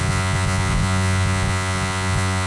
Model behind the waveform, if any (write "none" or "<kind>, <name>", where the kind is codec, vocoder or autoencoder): vocoder, Vocos